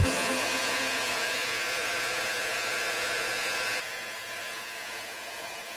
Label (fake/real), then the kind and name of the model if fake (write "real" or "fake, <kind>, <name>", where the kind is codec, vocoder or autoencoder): fake, vocoder, Vocos